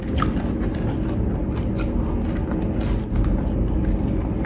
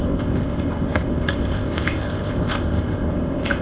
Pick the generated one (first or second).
second